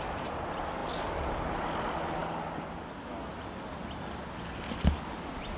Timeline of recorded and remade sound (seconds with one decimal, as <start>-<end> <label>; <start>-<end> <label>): 0.0-5.6 recorded